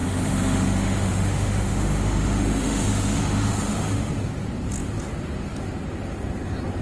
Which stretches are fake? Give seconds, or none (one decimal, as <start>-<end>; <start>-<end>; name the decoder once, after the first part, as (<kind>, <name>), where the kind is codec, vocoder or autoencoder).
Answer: 0.0-4.1 (autoencoder, DAC-VAE)